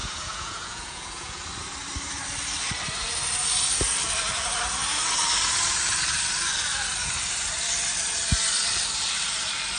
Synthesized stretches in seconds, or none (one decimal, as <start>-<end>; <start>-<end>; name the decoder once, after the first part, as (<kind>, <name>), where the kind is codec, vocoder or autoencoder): 0.0-1.4 (vocoder, Vocos)